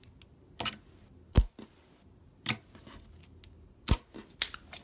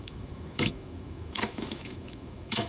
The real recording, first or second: first